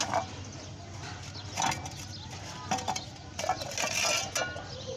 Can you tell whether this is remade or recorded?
recorded